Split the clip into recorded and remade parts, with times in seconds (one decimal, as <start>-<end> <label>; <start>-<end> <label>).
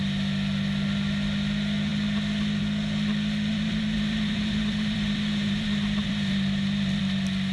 0.0-3.5 recorded; 3.5-7.0 remade; 7.0-7.5 recorded